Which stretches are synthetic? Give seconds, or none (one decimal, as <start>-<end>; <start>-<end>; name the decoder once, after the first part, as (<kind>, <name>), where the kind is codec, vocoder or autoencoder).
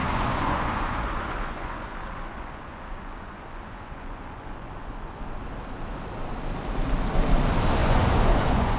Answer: 0.0-5.2 (vocoder, Vocos); 7.8-8.8